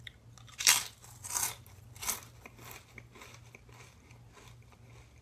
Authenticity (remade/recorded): recorded